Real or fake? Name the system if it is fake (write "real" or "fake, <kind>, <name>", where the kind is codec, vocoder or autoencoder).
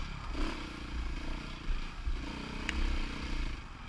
real